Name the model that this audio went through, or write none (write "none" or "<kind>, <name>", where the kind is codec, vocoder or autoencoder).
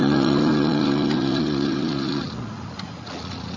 vocoder, Vocos